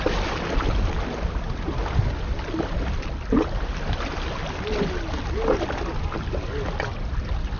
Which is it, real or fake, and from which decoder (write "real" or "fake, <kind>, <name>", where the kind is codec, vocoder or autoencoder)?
real